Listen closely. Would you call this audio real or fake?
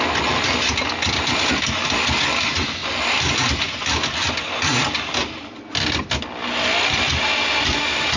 real